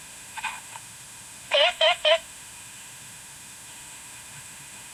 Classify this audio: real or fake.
fake